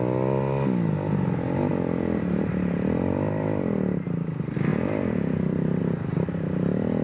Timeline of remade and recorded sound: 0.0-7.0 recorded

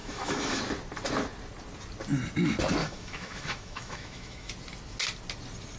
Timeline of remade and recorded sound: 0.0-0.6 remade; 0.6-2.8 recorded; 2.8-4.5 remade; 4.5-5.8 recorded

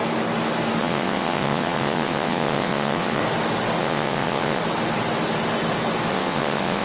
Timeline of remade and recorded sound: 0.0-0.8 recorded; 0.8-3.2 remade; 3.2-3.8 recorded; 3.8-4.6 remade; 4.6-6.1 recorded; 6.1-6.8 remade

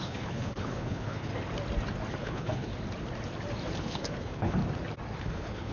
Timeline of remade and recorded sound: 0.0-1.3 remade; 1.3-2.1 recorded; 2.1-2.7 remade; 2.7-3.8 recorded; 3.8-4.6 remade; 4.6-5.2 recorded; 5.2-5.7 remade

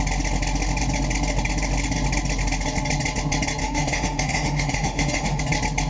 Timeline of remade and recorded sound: 0.0-3.6 recorded; 3.6-5.4 remade; 5.4-5.9 recorded

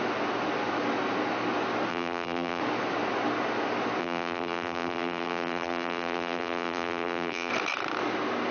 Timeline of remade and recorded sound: 0.0-1.9 recorded; 1.9-2.6 remade; 2.6-4.0 recorded; 4.0-7.5 remade; 7.5-8.5 recorded

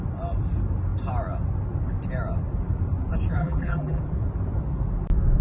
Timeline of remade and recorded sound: 0.0-3.4 recorded; 3.4-4.0 remade; 4.0-5.4 recorded